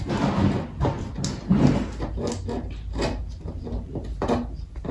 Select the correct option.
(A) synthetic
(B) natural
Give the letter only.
B